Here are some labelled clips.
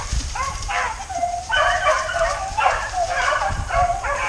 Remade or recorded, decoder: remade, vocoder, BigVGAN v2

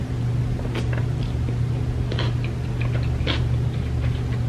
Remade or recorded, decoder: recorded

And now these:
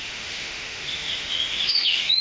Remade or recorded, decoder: remade, autoencoder, DAC-VAE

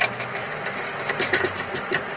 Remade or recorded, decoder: recorded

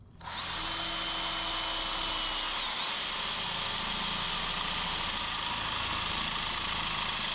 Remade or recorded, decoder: recorded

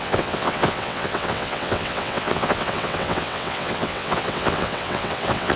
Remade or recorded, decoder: remade, vocoder, WaveNeXt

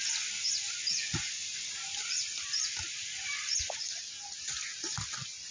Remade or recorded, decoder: recorded